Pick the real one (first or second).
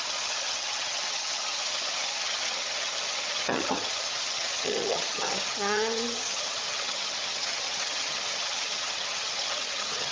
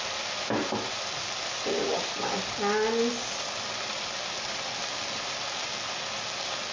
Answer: second